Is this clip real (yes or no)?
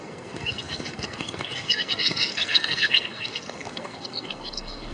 no